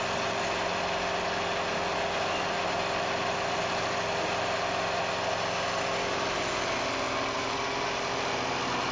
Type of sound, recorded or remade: recorded